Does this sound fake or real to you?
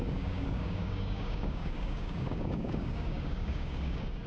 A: fake